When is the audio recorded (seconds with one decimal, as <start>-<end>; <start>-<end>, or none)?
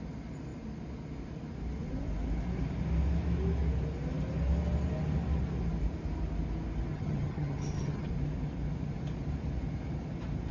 0.0-6.9; 8.1-10.5